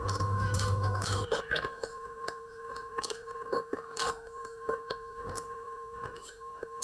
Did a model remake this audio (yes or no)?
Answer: yes